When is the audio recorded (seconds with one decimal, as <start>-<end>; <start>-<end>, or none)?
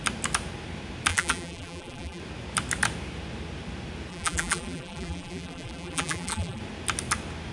0.0-1.1; 2.2-4.1; 6.6-7.5